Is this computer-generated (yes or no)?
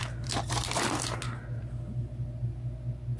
no